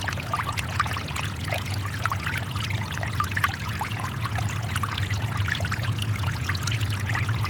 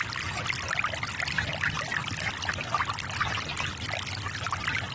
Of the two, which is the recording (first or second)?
second